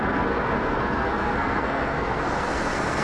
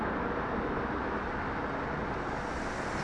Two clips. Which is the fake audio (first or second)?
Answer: first